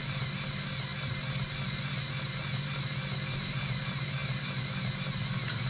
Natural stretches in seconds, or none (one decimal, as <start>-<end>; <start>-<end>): 0.0-5.7